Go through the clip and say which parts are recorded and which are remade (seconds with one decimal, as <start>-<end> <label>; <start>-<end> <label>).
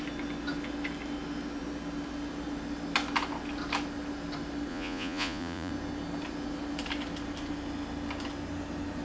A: 0.0-4.7 recorded; 4.7-5.7 remade; 5.7-9.0 recorded